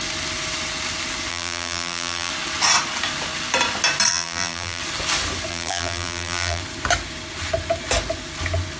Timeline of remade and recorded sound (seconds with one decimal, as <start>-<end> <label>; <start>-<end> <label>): 0.0-1.3 recorded; 1.3-2.3 remade; 2.3-4.1 recorded; 4.1-4.8 remade; 4.8-5.5 recorded; 5.5-6.6 remade; 6.6-8.8 recorded